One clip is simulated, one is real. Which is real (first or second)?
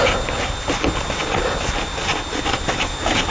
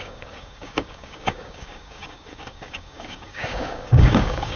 first